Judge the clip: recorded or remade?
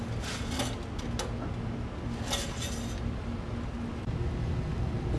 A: recorded